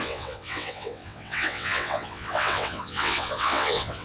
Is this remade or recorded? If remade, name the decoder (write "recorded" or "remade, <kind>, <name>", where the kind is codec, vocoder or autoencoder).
remade, vocoder, WaveNeXt